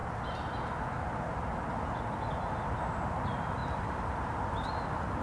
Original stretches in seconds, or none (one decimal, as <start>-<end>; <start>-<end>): 0.0-3.6; 4.8-5.2